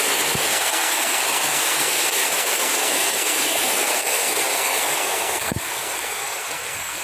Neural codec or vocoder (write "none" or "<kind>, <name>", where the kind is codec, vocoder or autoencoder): codec, SNAC